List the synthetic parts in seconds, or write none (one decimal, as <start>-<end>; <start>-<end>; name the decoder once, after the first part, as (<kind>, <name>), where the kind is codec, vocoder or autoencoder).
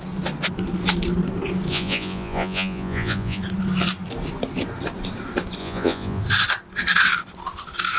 1.7-3.4 (vocoder, Vocos); 5.6-6.2